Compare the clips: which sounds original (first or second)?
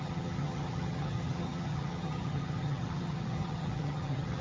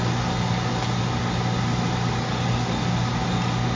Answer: second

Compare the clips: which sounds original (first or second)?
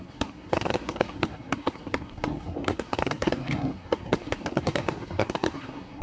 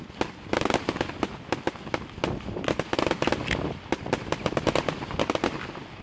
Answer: second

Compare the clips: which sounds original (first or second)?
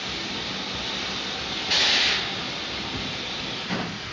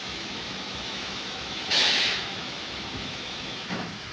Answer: first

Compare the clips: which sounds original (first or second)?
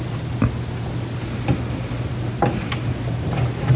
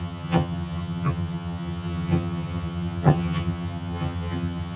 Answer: first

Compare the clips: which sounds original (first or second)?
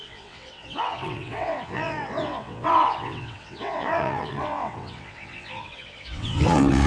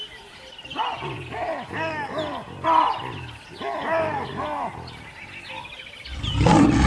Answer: second